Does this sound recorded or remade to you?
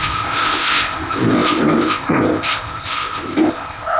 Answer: remade